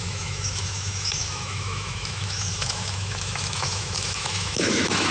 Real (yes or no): no